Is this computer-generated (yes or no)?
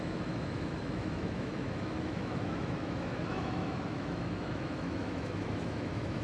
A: yes